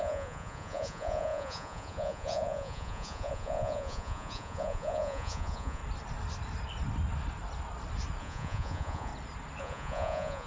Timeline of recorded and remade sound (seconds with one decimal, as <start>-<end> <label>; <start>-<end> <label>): 0.0-5.8 remade; 5.8-8.2 recorded; 8.2-9.1 remade; 9.1-9.6 recorded; 9.6-10.5 remade